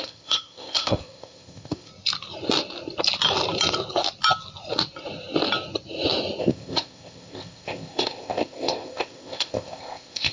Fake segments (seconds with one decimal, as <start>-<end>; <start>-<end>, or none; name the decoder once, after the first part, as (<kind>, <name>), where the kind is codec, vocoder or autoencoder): 0.0-1.9 (codec, ZipCodec); 6.4-10.3